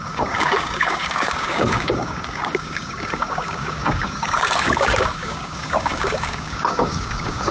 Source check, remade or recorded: remade